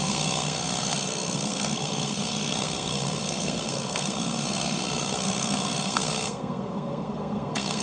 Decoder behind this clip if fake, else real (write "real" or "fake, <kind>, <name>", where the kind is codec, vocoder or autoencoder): fake, codec, SNAC